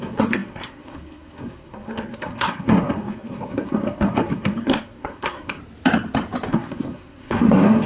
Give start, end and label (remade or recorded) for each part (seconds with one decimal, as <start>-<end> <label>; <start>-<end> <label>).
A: 0.0-5.6 remade; 5.6-6.5 recorded; 6.5-7.9 remade